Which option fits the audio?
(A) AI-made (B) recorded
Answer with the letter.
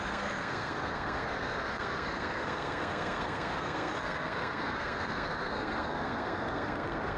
A